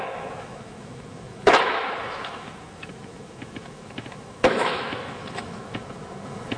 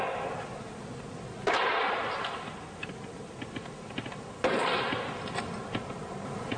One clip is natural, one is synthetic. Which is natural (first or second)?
second